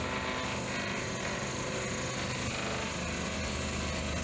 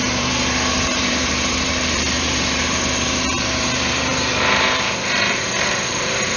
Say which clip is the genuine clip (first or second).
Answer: first